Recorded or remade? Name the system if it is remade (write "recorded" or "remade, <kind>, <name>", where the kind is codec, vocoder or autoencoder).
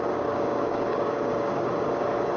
remade, codec, DAC